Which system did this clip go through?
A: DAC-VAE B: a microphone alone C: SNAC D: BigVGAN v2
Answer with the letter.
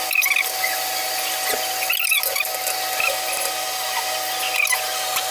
B